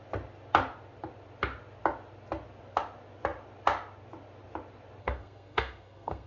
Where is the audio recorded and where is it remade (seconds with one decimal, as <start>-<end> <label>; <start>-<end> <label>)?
0.0-5.0 recorded; 5.0-6.3 remade